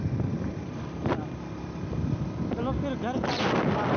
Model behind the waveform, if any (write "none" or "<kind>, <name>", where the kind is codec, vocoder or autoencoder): none